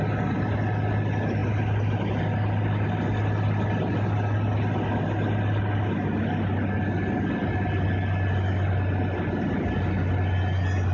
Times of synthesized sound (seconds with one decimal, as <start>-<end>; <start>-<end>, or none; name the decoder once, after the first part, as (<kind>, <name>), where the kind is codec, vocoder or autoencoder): none